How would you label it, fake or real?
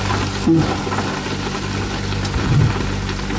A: real